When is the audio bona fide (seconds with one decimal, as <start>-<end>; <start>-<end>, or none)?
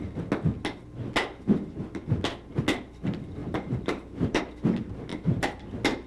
0.0-3.4; 4.4-5.1; 5.6-6.1